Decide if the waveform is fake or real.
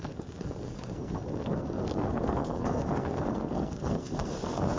fake